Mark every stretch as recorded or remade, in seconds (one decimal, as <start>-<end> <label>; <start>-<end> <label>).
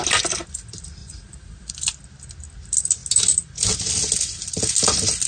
0.0-1.0 recorded; 1.0-1.7 remade; 1.7-5.3 recorded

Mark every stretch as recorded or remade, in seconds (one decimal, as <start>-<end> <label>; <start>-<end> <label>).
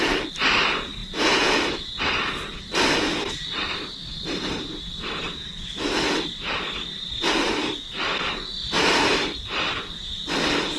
0.0-1.0 recorded; 1.0-2.0 remade; 2.0-10.8 recorded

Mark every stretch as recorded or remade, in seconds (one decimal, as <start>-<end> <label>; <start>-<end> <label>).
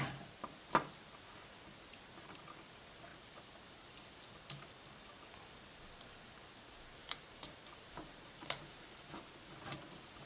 0.0-3.1 recorded; 3.1-3.9 remade; 3.9-7.0 recorded; 7.0-9.1 remade; 9.1-10.3 recorded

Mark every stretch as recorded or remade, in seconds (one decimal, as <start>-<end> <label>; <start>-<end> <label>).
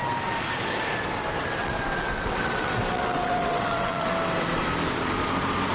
0.0-1.6 recorded; 1.6-4.1 remade; 4.1-5.7 recorded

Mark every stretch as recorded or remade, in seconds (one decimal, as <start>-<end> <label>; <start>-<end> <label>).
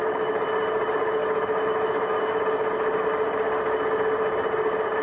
0.0-1.2 recorded; 1.2-2.4 remade; 2.4-5.0 recorded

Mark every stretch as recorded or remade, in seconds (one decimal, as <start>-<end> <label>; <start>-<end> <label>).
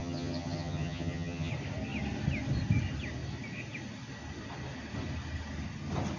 0.0-1.5 remade; 1.5-6.2 recorded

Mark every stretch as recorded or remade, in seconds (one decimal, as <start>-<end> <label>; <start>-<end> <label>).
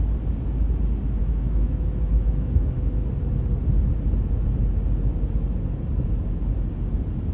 0.0-1.2 recorded; 1.2-3.1 remade; 3.1-7.3 recorded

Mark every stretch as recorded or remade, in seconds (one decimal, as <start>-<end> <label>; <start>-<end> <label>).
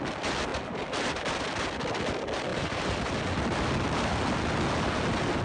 0.0-0.5 recorded; 0.5-1.4 remade; 1.4-2.5 recorded; 2.5-3.7 remade; 3.7-5.4 recorded